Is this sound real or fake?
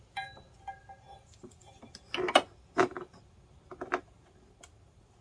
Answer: real